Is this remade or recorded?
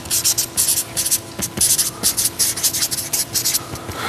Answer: recorded